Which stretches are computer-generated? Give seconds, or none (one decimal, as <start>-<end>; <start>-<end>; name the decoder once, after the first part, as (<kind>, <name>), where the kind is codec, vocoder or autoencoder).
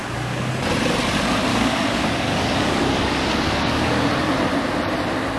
0.0-0.5 (codec, DAC); 1.5-4.1